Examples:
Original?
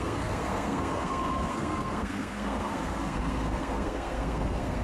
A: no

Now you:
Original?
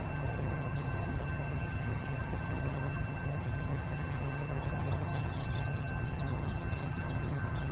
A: no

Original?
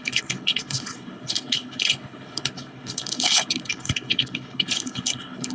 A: no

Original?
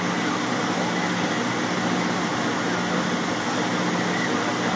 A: yes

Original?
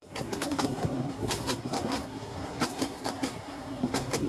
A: no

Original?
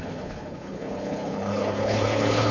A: no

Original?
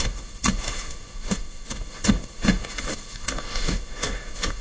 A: no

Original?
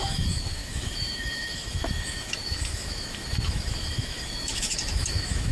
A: no